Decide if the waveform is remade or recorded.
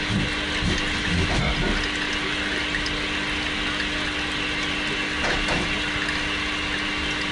recorded